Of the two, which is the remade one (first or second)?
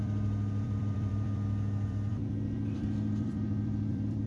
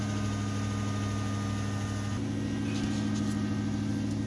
first